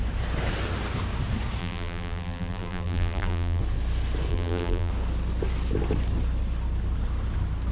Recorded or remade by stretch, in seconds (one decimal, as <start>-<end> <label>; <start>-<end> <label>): 0.0-1.6 recorded; 1.6-3.6 remade; 3.6-4.3 recorded; 4.3-4.9 remade; 4.9-7.7 recorded